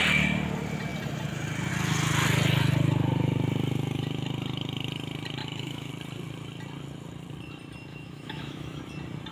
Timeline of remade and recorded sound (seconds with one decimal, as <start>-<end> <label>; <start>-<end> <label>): 0.0-5.4 recorded; 5.4-5.9 remade; 5.9-7.9 recorded; 7.9-8.8 remade; 8.8-9.3 recorded